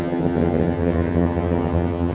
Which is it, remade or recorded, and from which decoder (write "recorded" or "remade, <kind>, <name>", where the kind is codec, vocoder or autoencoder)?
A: remade, vocoder, HiFi-GAN